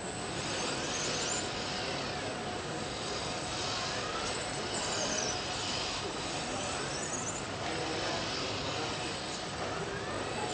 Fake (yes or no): no